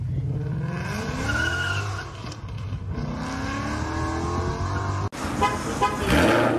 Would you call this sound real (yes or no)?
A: yes